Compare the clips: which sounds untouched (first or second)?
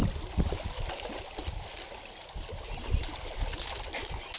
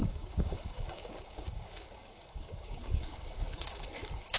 first